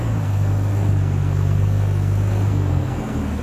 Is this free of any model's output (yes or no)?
no